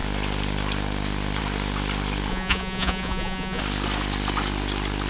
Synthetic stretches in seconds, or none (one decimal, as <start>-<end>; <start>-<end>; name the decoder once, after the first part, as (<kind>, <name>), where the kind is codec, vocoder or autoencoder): 2.3-3.6 (vocoder, Vocos)

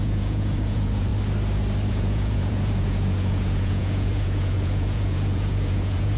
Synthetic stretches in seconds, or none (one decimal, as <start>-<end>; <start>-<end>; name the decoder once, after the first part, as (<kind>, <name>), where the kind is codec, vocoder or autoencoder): 0.0-1.1 (vocoder, Vocos); 1.9-6.2

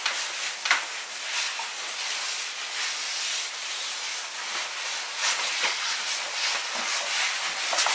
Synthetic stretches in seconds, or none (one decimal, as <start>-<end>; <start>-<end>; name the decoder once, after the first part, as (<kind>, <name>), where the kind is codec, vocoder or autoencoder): 5.2-6.0 (vocoder, Vocos)